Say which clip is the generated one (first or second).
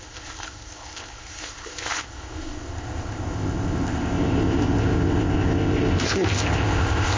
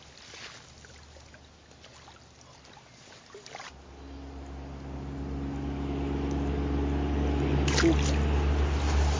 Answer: first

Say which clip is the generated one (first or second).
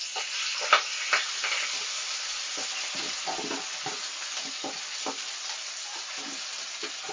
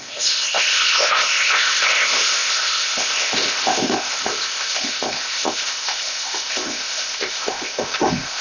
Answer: second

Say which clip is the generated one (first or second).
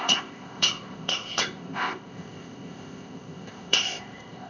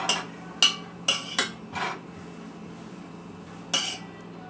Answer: first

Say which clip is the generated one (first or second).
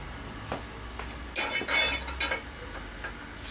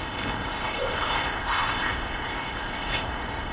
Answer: second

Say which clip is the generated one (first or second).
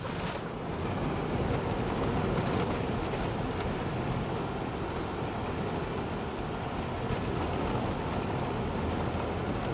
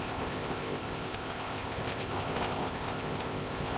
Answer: second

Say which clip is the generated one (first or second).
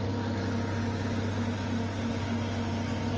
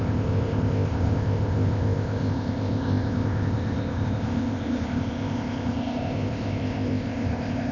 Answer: second